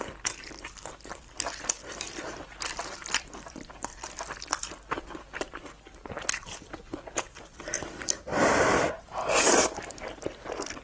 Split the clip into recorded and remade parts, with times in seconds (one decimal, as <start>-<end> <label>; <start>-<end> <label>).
0.0-10.8 remade